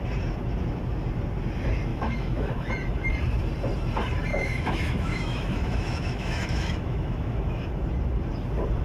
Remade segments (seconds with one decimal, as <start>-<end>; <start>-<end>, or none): 1.9-2.7; 4.3-7.7